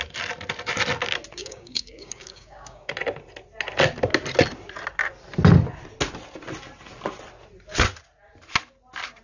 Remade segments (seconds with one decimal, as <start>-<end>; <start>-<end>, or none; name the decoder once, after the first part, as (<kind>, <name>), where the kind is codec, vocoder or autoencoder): 1.4-2.9 (codec, DAC)